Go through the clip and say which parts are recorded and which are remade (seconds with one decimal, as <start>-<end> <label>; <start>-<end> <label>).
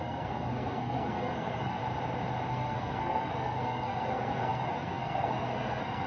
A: 0.0-1.8 remade; 1.8-2.5 recorded; 2.5-6.1 remade